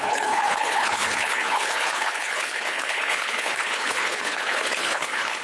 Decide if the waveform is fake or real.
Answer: fake